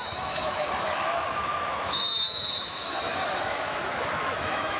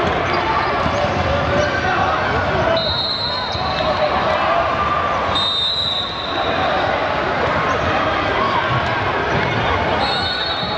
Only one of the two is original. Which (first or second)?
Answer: second